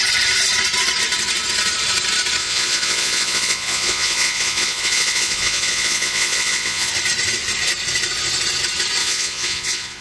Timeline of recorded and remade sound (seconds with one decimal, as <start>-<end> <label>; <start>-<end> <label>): 0.0-2.4 recorded; 2.4-6.9 remade; 6.9-9.0 recorded; 9.0-10.0 remade